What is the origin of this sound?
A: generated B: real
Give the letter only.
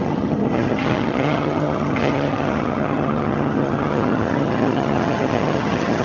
A